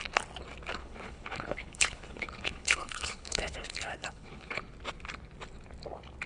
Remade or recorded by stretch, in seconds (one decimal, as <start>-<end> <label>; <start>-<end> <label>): 0.0-0.8 recorded; 0.8-4.6 remade; 4.6-6.3 recorded